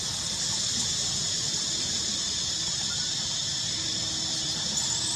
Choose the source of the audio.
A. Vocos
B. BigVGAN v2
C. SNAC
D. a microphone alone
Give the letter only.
D